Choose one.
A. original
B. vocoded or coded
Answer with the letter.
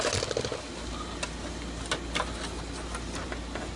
A